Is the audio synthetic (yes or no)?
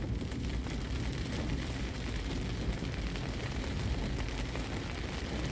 no